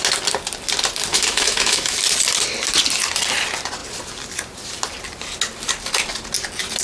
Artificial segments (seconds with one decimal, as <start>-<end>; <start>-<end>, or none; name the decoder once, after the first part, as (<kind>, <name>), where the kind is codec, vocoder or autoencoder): 1.1-2.0 (autoencoder, DAC-VAE)